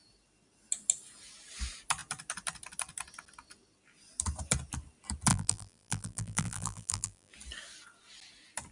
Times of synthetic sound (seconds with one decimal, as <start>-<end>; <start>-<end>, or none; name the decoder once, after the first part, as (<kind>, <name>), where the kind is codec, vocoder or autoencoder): 5.3-7.3 (vocoder, BigVGAN v2)